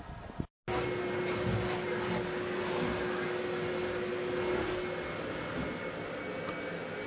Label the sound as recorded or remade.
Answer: recorded